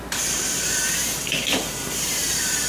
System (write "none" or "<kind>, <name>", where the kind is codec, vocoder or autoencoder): vocoder, BigVGAN v2